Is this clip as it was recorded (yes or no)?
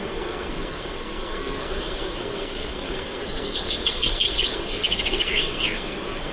no